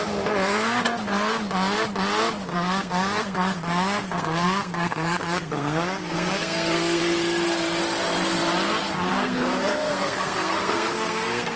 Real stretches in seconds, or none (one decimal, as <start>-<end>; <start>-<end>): 0.0-2.5; 7.0-9.1